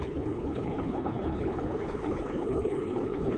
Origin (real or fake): fake